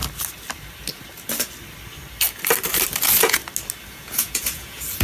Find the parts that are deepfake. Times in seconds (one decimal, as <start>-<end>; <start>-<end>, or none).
3.0-3.4; 3.9-5.0